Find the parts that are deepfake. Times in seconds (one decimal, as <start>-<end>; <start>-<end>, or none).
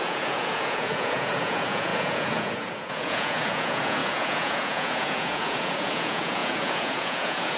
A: 0.0-7.6